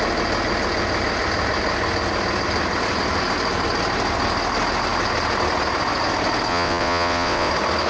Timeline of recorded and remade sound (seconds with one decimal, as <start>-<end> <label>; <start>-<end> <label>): 0.0-6.5 recorded; 6.5-7.5 remade; 7.5-7.9 recorded